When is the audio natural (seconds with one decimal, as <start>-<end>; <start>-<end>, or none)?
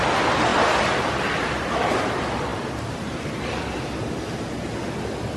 0.0-0.5; 1.5-2.5; 3.3-5.4